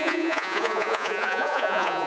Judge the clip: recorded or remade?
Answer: remade